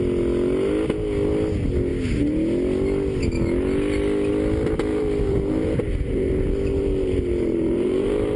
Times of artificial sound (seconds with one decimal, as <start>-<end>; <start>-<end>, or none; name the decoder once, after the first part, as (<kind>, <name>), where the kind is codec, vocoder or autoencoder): 4.9-8.4 (vocoder, BigVGAN v2)